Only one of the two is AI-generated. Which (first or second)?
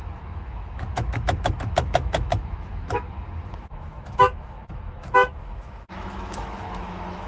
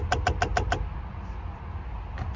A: first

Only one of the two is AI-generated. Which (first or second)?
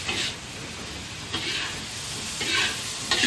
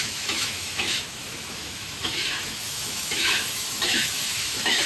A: second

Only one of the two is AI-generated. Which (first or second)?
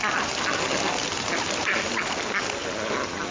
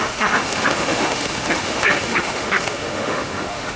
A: second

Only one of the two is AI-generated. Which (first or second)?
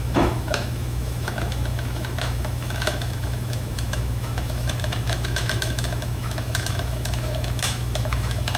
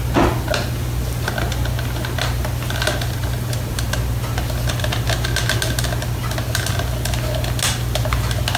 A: first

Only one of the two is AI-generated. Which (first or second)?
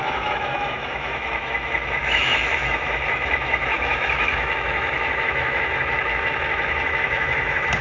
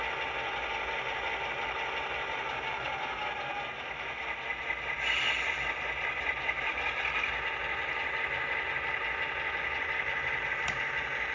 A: first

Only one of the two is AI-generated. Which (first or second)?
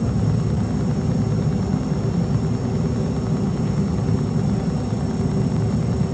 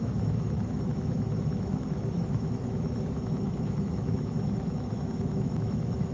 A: second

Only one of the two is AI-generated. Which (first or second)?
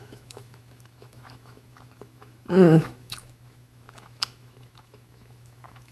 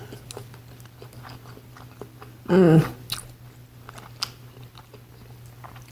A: first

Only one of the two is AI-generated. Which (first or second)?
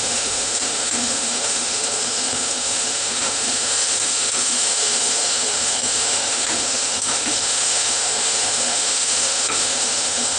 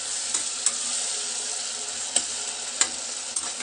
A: first